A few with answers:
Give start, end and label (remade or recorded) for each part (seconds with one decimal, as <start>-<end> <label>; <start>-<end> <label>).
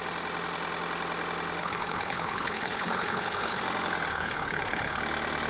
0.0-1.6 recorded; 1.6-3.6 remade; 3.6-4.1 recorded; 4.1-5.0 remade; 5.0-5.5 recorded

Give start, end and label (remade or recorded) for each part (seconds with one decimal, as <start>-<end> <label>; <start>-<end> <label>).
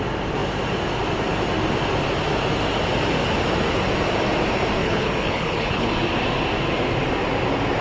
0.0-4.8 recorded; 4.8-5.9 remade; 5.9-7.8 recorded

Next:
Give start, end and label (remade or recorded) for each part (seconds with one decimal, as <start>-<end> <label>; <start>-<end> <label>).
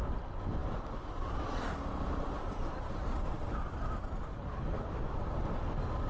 0.0-4.3 recorded; 4.3-4.9 remade; 4.9-6.1 recorded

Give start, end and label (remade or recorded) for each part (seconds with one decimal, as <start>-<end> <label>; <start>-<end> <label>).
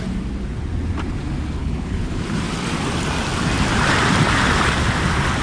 0.0-1.6 recorded; 1.6-2.2 remade; 2.2-5.4 recorded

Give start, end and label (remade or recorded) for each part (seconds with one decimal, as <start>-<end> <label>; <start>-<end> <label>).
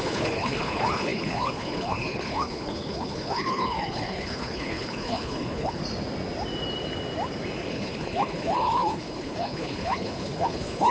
0.0-5.8 remade; 5.8-7.7 recorded; 7.7-10.9 remade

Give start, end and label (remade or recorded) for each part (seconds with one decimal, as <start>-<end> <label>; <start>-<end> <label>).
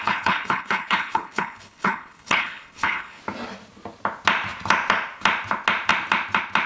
0.0-3.2 remade; 3.2-6.7 recorded